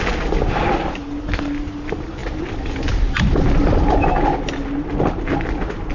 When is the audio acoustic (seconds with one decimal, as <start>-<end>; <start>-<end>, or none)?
0.0-5.9